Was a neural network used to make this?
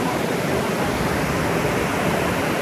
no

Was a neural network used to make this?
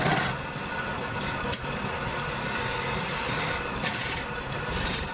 no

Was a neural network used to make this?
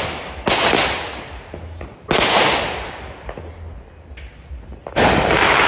no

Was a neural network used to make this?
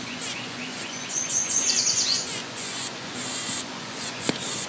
yes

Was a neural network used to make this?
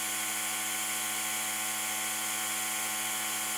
no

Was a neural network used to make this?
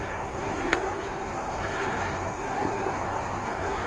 yes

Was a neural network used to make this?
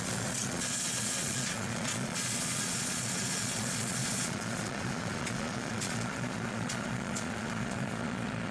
yes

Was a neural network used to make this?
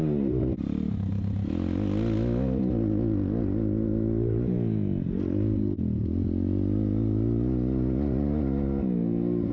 no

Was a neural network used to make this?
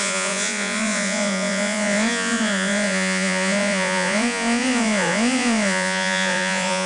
yes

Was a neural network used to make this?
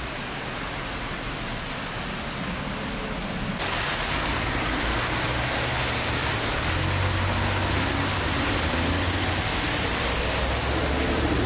no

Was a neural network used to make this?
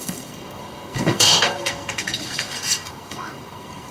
yes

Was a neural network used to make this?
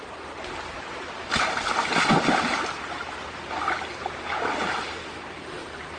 no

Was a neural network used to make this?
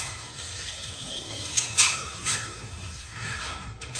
yes